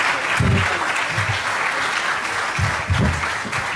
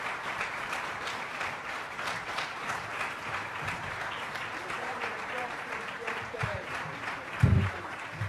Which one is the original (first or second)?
first